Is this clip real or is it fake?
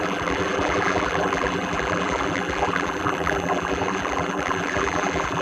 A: fake